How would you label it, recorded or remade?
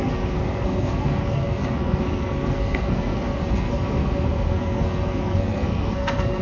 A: remade